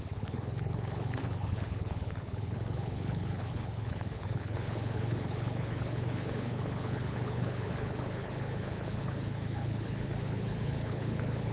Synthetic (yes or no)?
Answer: yes